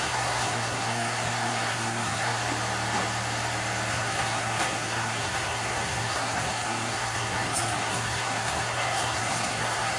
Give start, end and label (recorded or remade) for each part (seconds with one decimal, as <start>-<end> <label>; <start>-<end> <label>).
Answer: 0.0-2.4 remade; 2.4-3.9 recorded; 3.9-10.0 remade